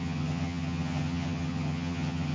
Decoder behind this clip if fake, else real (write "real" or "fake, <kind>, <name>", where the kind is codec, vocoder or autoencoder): fake, vocoder, HiFi-GAN